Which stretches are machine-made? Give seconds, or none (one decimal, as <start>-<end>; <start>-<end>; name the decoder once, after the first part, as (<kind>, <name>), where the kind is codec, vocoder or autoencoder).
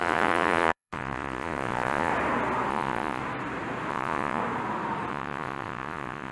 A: 0.0-2.1 (vocoder, Vocos); 2.7-3.2; 3.9-4.4; 5.1-6.3